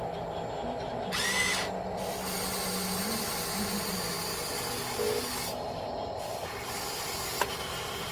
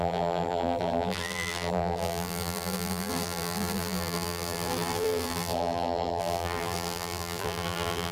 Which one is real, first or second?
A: first